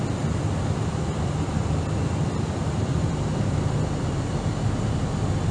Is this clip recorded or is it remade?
recorded